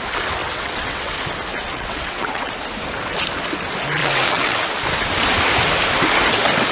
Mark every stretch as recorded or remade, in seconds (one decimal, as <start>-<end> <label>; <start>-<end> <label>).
0.0-0.4 recorded; 0.4-1.1 remade; 1.1-1.5 recorded; 1.5-2.5 remade; 2.5-4.0 recorded; 4.0-4.6 remade; 4.6-6.7 recorded